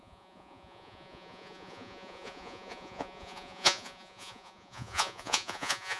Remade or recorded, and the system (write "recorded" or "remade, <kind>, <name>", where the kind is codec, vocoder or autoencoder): remade, vocoder, Vocos